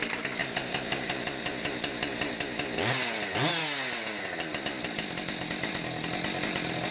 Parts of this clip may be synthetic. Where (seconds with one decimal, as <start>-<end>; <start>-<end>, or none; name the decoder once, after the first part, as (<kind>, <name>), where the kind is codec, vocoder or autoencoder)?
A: 0.4-2.3 (vocoder, BigVGAN v2)